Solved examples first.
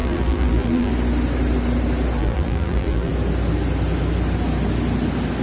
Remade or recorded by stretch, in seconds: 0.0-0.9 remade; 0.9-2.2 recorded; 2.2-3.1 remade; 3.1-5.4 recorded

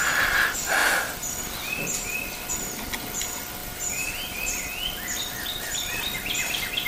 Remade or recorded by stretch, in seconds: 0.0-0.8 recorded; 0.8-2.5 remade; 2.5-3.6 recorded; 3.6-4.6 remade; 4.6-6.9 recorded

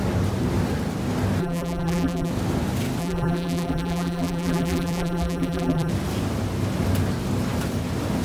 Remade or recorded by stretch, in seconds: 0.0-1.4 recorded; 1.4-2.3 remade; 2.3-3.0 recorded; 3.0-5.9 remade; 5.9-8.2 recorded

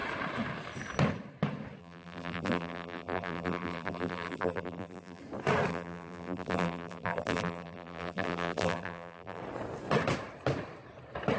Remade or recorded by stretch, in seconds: 0.0-1.8 recorded; 1.8-5.2 remade; 5.2-5.7 recorded; 5.7-9.4 remade; 9.4-11.4 recorded

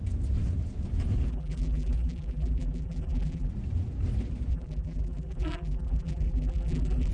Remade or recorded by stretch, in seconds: 0.0-1.3 recorded; 1.3-3.5 remade; 3.5-4.5 recorded; 4.5-7.1 remade

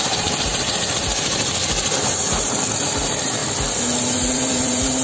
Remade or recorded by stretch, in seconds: 0.0-1.5 remade; 1.5-3.0 recorded; 3.0-3.4 remade; 3.4-4.3 recorded; 4.3-5.0 remade

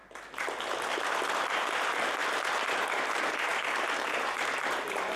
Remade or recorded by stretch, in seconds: 0.0-1.3 recorded; 1.3-2.2 remade; 2.2-3.1 recorded; 3.1-5.2 remade